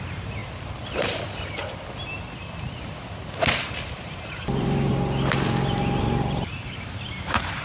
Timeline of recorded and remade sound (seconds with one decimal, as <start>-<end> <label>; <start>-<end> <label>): 0.0-0.4 remade; 0.4-4.0 recorded; 4.0-4.9 remade; 4.9-6.0 recorded; 6.0-7.6 remade